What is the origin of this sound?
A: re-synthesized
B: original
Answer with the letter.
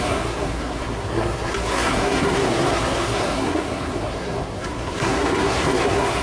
A